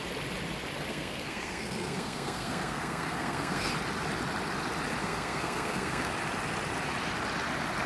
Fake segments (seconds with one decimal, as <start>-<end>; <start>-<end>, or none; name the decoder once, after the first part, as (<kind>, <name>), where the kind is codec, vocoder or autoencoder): 0.9-3.7 (codec, SNAC); 5.0-6.1

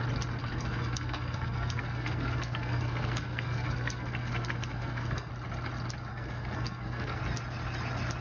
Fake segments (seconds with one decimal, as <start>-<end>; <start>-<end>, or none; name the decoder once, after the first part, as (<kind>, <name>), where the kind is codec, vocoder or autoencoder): 0.4-5.3 (codec, SNAC); 6.1-7.2

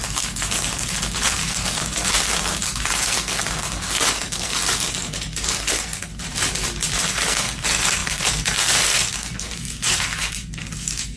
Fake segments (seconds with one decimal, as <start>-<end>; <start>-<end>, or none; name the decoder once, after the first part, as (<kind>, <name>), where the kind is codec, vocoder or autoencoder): 0.0-6.1 (codec, SNAC); 7.0-11.2

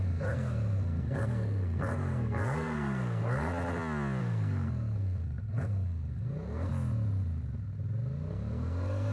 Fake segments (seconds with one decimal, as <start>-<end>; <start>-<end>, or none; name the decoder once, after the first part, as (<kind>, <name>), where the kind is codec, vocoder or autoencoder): 0.0-3.5 (codec, SNAC); 4.2-6.7; 8.3-9.1

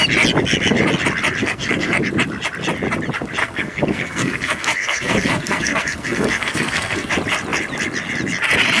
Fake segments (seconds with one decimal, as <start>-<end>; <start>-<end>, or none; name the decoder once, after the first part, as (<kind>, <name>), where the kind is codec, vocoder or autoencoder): 1.4-2.0 (codec, SNAC); 3.4-7.1